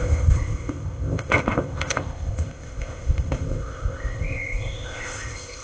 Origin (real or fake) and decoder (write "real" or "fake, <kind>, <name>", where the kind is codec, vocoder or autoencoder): fake, codec, ZipCodec